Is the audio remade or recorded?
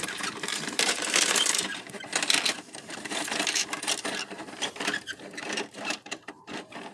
remade